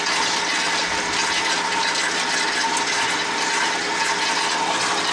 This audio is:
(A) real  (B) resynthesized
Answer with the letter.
A